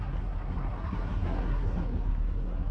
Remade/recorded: remade